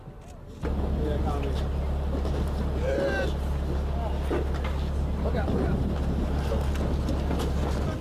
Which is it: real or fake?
real